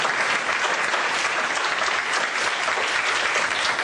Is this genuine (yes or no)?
yes